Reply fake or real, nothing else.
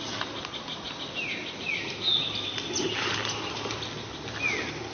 real